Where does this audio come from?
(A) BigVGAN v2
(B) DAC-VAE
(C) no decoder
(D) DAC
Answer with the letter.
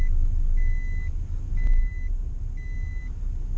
C